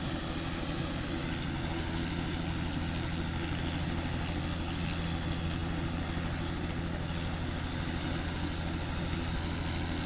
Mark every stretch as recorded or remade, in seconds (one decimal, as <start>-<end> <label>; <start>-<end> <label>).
0.0-10.1 recorded